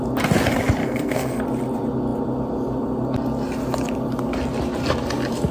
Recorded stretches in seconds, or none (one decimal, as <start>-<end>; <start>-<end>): 0.0-0.8; 1.4-5.5